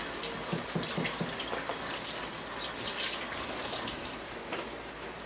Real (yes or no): yes